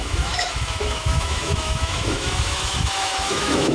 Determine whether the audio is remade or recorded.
remade